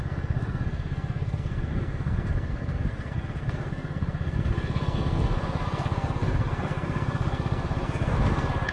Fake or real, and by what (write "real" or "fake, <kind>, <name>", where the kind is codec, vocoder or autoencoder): fake, codec, SNAC